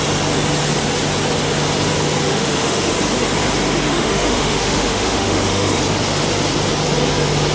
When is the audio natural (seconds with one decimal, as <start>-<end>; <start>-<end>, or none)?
0.0-2.3; 2.9-3.9; 5.8-7.5